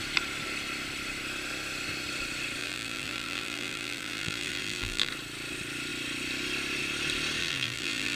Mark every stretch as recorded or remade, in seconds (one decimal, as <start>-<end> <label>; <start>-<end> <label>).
0.0-2.6 recorded; 2.6-5.1 remade; 5.1-7.4 recorded; 7.4-8.2 remade